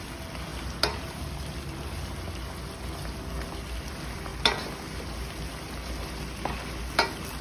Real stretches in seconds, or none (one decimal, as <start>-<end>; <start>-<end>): 0.0-7.4